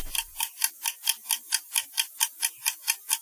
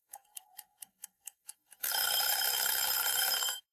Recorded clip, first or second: first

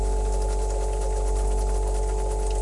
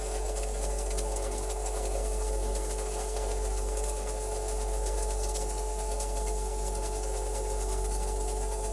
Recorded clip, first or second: first